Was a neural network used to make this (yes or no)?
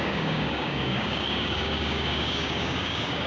yes